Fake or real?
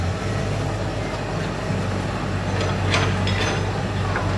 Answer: real